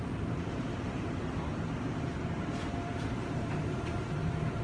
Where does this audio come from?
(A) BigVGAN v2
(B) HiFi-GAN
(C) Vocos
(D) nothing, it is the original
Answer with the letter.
A